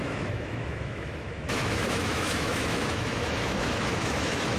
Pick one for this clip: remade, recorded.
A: remade